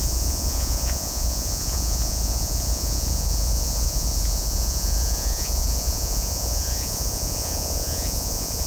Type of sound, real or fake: fake